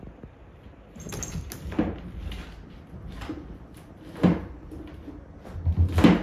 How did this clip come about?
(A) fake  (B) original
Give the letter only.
B